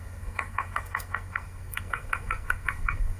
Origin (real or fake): fake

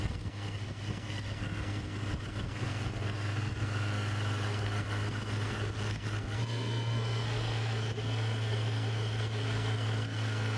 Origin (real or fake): fake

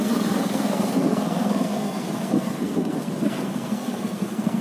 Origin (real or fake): fake